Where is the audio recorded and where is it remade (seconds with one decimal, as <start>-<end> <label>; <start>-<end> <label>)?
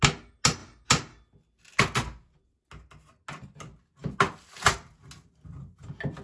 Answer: 0.0-6.2 recorded